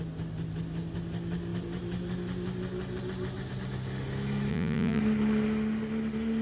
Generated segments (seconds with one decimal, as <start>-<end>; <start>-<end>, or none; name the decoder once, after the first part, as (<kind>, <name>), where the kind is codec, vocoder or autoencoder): 4.5-5.0 (vocoder, Vocos)